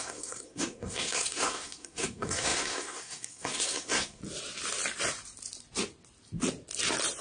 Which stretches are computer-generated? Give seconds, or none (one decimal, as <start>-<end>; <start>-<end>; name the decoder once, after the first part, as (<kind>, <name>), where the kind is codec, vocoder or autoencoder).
0.0-4.2 (codec, SNAC)